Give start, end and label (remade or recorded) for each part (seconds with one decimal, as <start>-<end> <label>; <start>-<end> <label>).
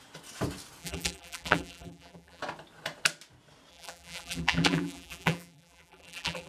0.0-0.8 recorded; 0.8-2.4 remade; 2.4-3.7 recorded; 3.7-6.5 remade